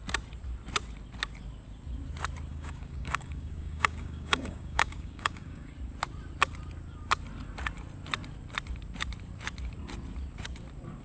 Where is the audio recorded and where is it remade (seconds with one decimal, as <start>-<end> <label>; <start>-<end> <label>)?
0.0-2.5 recorded; 2.5-5.7 remade; 5.7-11.0 recorded